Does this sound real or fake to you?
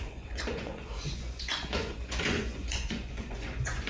fake